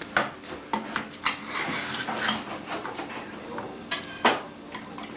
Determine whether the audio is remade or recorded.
recorded